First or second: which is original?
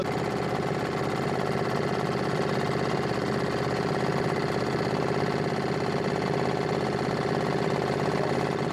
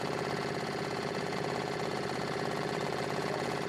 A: first